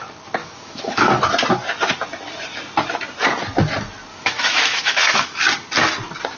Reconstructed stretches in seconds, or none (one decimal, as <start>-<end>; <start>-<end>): 0.4-1.1; 4.1-5.4